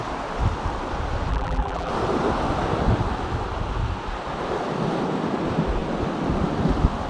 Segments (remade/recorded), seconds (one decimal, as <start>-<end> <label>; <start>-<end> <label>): 0.0-1.3 recorded; 1.3-1.9 remade; 1.9-7.1 recorded